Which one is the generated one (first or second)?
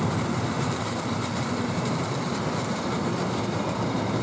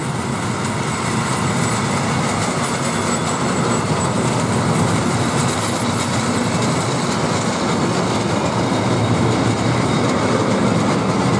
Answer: first